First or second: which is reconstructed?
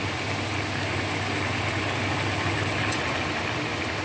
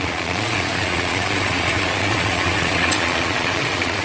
second